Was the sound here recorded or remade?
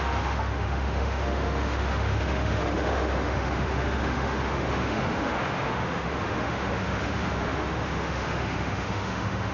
remade